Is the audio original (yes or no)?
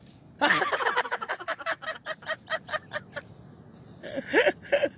yes